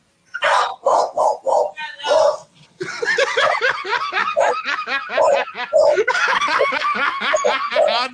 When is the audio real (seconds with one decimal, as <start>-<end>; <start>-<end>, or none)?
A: 0.0-0.7; 1.2-2.3; 3.5-8.1